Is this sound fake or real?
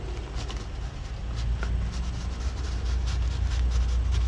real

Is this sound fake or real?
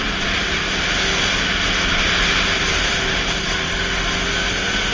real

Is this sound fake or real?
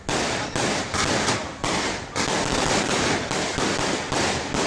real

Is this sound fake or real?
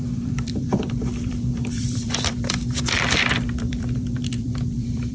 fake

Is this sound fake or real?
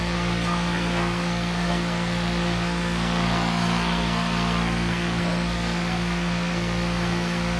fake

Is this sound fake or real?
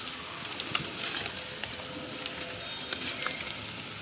real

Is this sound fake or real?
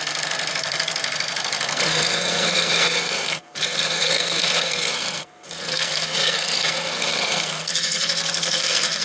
fake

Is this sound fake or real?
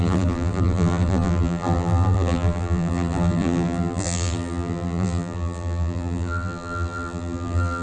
fake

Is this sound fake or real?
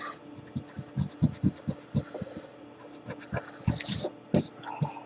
real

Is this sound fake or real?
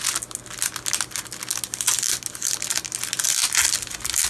real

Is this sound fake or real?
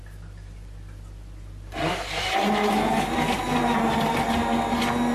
real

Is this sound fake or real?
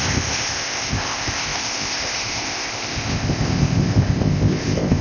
fake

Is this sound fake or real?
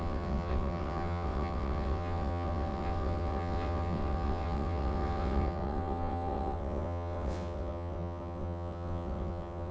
fake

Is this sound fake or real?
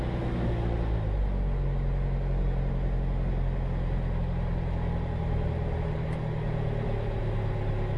real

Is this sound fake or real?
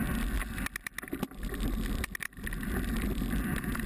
real